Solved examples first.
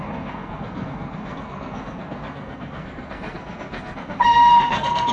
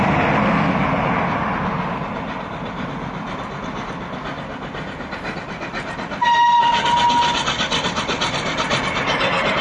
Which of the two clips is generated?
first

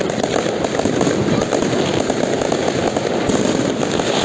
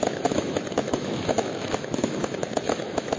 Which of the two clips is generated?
second